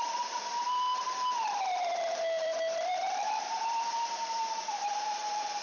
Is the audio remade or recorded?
remade